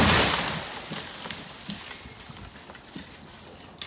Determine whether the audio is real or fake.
real